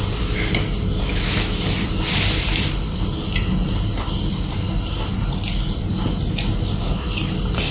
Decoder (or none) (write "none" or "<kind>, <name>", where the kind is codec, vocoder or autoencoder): none